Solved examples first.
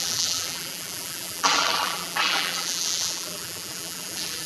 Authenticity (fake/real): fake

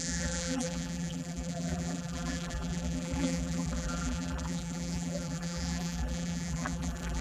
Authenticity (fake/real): fake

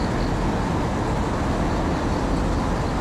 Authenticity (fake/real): real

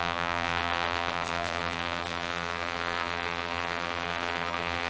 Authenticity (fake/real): fake